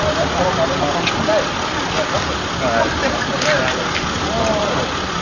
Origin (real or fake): real